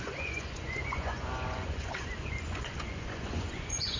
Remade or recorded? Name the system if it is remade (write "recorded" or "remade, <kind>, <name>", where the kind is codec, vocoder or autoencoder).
remade, vocoder, Vocos